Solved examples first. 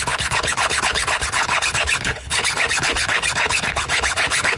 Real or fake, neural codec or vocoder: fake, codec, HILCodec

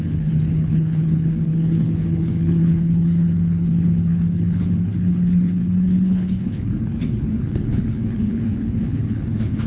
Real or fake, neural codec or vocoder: fake, codec, HILCodec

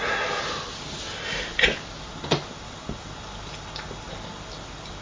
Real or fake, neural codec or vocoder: real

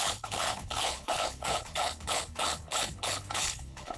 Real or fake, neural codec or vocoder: fake, codec, HILCodec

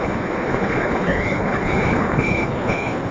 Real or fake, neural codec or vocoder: fake, codec, HILCodec